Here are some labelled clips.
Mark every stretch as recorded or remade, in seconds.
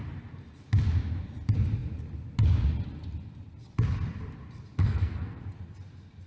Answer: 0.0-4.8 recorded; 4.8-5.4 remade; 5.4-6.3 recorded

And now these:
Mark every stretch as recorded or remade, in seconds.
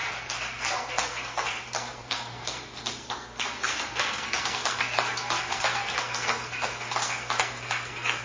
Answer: 0.0-8.2 remade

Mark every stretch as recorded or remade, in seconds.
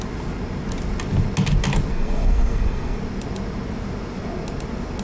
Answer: 0.0-1.9 recorded; 1.9-3.0 remade; 3.0-5.0 recorded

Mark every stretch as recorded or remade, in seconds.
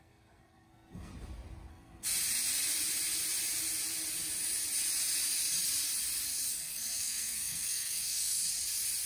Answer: 0.0-1.1 remade; 1.1-1.7 recorded; 1.7-2.1 remade; 2.1-6.5 recorded; 6.5-8.4 remade; 8.4-9.1 recorded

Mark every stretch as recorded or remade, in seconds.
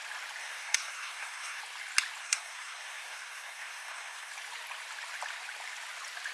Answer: 0.0-0.4 recorded; 0.4-1.6 remade; 1.6-2.2 recorded; 2.2-4.3 remade; 4.3-6.3 recorded